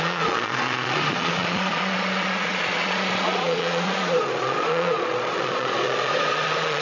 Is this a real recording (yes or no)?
no